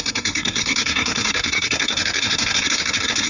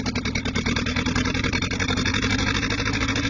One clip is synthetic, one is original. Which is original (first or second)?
second